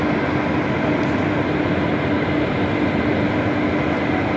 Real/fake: real